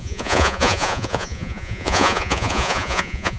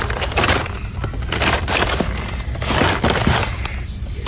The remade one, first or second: first